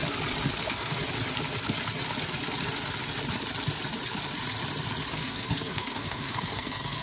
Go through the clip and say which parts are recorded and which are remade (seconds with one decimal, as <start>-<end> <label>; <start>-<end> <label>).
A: 0.0-0.6 recorded; 0.6-1.0 remade; 1.0-5.1 recorded; 5.1-7.0 remade